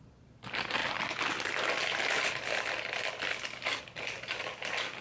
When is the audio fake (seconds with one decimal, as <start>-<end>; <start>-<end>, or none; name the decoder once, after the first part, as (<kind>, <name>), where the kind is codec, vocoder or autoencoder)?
none